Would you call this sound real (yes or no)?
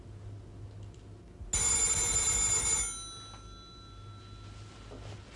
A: yes